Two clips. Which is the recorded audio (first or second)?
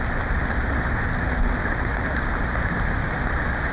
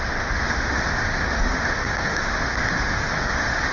first